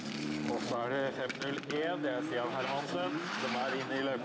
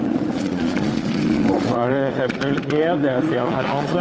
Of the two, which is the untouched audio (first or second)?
first